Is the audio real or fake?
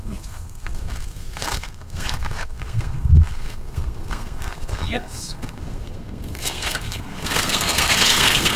fake